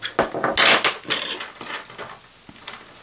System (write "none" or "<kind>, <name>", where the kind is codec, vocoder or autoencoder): none